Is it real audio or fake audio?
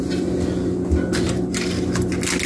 real